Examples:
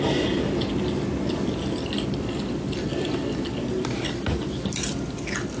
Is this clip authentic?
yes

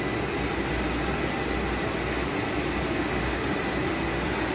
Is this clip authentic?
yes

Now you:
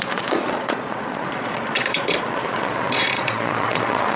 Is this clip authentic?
no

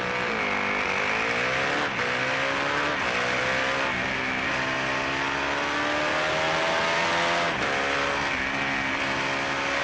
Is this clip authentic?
yes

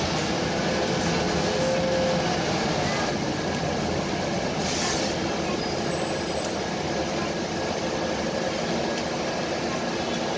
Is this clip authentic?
yes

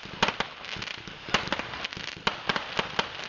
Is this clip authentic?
yes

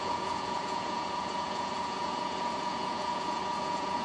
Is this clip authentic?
no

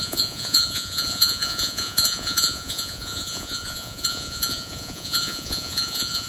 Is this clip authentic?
no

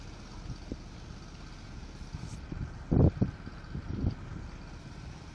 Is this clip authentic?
yes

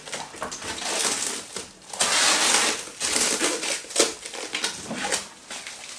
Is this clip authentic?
yes